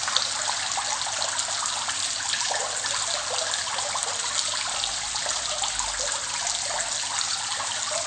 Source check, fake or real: real